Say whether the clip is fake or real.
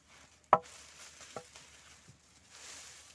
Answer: real